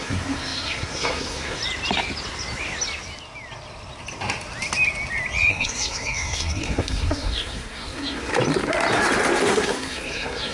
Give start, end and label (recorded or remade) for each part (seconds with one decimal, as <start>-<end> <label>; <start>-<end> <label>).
0.0-1.6 remade; 1.6-5.5 recorded; 5.5-8.3 remade; 8.3-9.5 recorded; 9.5-10.5 remade